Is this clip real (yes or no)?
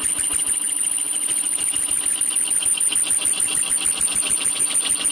yes